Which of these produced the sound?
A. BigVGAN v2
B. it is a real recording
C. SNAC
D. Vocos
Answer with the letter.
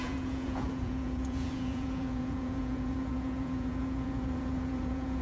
D